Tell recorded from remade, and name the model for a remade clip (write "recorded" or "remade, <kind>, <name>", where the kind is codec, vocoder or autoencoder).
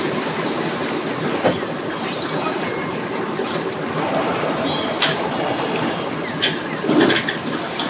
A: recorded